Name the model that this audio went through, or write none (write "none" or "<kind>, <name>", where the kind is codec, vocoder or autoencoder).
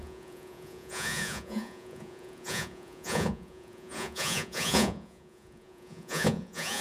vocoder, Vocos